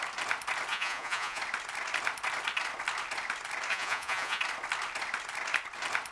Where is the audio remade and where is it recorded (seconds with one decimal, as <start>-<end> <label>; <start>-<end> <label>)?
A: 0.0-0.7 recorded; 0.7-1.4 remade; 1.4-3.7 recorded; 3.7-4.4 remade; 4.4-6.1 recorded